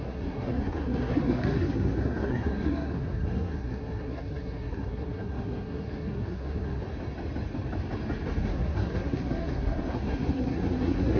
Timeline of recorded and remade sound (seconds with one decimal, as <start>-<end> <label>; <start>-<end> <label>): 0.0-6.8 remade; 6.8-8.4 recorded; 8.4-11.2 remade